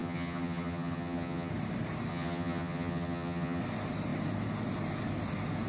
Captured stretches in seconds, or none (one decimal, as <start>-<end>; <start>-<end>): 1.5-2.1; 3.6-5.7